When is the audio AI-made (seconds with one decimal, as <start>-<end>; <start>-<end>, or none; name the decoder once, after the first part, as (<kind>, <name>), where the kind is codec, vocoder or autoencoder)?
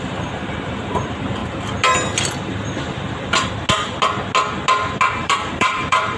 0.0-1.4 (vocoder, BigVGAN v2); 5.1-6.2